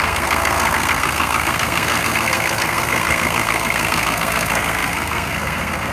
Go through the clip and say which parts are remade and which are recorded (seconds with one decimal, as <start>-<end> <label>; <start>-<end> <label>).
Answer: 0.0-5.9 remade

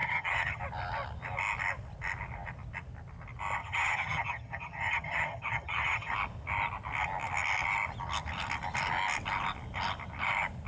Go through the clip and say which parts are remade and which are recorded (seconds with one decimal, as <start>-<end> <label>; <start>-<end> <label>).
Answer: 0.0-0.6 remade; 0.6-3.6 recorded; 3.6-6.1 remade; 6.1-10.7 recorded

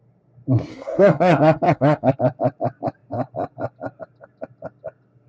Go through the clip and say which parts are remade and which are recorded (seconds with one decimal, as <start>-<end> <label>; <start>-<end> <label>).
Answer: 0.0-0.7 recorded; 0.7-2.1 remade; 2.1-5.3 recorded

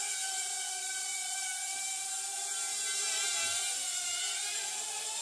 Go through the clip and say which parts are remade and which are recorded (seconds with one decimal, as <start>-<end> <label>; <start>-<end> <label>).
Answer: 0.0-5.2 remade

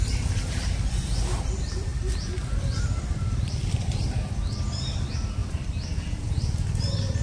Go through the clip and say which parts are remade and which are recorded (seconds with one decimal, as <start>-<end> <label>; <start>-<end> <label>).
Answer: 0.0-1.9 remade; 1.9-2.6 recorded; 2.6-7.2 remade